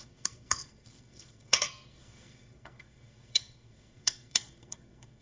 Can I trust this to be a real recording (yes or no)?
no